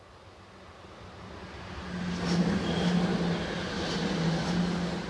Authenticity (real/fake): real